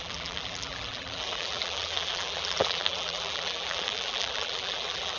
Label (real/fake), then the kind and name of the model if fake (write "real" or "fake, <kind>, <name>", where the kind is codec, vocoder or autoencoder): fake, vocoder, BigVGAN v2